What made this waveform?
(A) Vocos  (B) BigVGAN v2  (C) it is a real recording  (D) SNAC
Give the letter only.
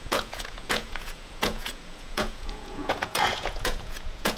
A